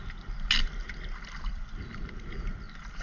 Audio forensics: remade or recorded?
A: recorded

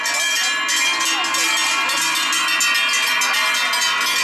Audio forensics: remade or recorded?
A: recorded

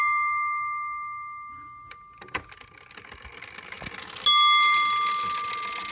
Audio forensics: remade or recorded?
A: recorded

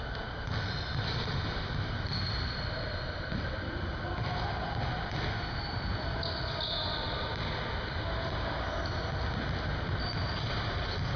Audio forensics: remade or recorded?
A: recorded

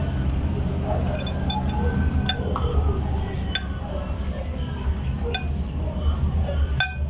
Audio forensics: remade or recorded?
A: recorded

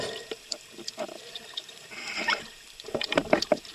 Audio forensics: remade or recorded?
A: remade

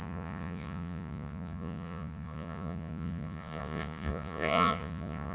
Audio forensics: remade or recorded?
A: remade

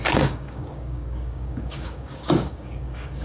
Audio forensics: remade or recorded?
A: remade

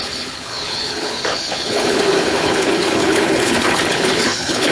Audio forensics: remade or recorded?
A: remade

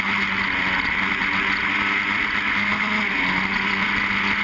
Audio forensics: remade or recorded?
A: recorded